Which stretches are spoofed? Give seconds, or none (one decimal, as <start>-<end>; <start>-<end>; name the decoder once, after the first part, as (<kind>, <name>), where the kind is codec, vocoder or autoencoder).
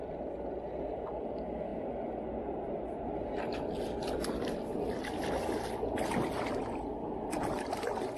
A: none